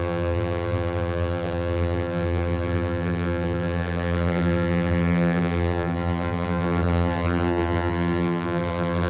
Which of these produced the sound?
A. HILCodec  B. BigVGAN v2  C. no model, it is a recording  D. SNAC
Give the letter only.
B